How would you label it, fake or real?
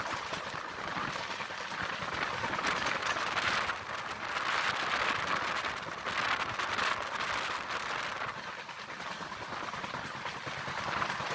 real